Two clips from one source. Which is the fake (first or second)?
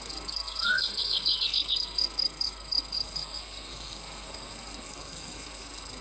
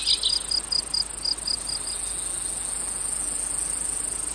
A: first